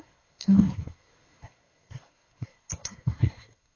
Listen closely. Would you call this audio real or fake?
fake